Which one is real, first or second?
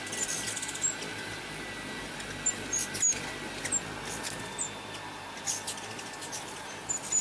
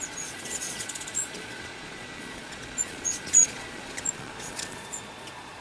first